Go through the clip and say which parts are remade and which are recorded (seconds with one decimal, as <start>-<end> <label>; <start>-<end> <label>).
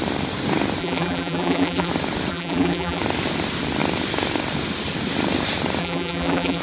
0.0-0.8 recorded; 0.8-1.9 remade; 1.9-2.3 recorded; 2.3-3.0 remade; 3.0-5.8 recorded; 5.8-6.6 remade